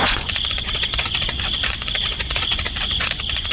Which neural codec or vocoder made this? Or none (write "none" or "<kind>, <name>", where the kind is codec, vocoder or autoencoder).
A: vocoder, Vocos